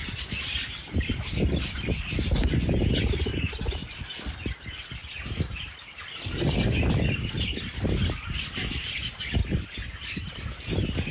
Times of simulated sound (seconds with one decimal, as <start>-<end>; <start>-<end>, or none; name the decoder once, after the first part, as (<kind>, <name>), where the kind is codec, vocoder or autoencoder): none